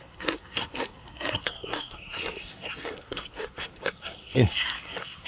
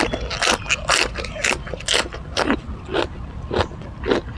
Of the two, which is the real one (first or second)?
second